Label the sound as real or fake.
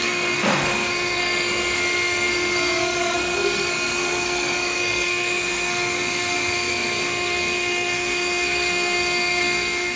fake